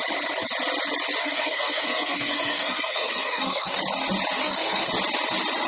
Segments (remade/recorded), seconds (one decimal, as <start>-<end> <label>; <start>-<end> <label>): 0.0-1.2 recorded; 1.2-3.8 remade; 3.8-4.4 recorded; 4.4-4.9 remade; 4.9-5.7 recorded